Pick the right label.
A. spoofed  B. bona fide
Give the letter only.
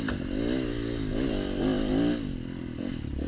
B